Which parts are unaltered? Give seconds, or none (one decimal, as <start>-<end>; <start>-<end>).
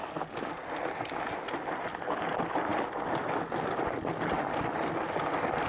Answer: 0.0-5.7